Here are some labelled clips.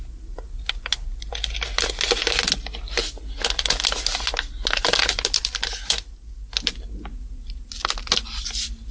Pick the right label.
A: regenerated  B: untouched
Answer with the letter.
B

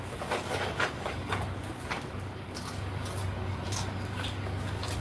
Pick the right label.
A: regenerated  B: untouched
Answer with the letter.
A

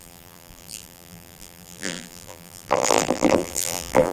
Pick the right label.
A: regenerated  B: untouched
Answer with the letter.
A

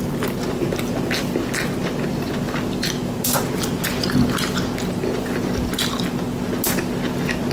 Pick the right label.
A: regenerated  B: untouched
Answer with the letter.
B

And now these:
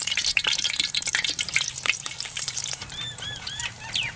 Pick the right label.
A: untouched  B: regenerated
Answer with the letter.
B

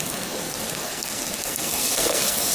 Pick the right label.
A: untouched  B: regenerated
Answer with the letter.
B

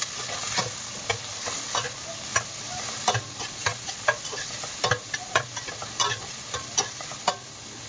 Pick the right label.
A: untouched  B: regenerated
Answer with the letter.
A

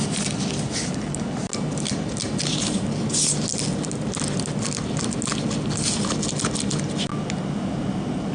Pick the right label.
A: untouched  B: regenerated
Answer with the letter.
A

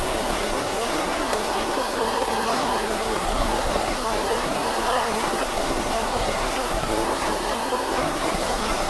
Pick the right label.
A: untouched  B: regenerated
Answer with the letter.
B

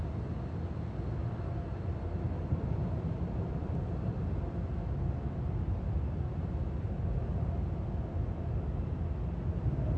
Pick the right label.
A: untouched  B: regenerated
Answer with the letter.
A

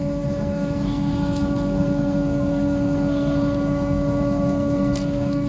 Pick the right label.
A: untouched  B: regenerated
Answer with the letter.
B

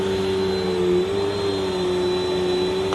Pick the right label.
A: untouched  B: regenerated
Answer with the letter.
A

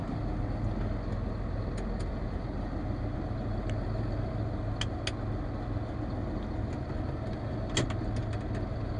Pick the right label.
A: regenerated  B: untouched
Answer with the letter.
B